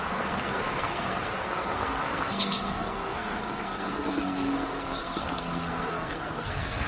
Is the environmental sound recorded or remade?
remade